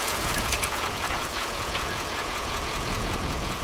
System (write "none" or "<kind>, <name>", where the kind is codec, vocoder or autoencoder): vocoder, Vocos